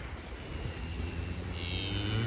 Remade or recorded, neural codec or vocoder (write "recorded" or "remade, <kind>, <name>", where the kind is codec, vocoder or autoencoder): recorded